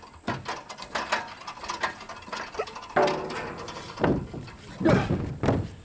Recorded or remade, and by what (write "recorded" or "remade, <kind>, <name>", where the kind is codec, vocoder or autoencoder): recorded